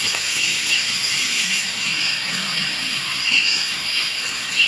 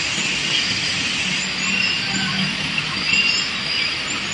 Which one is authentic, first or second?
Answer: second